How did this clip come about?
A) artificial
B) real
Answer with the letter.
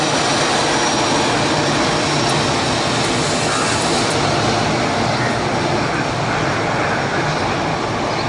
B